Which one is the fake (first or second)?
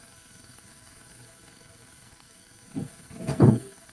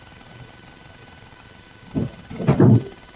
first